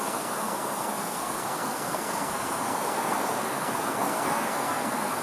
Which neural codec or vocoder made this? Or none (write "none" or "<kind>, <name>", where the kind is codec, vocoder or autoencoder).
codec, SNAC